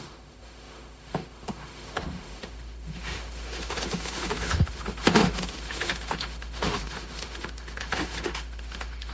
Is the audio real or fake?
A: fake